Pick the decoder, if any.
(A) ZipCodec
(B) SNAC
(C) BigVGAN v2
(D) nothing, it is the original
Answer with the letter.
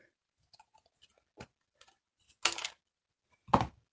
D